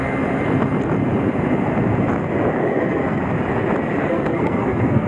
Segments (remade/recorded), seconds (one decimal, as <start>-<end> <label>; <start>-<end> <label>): 0.0-2.6 recorded; 2.6-3.2 remade; 3.2-4.0 recorded; 4.0-5.1 remade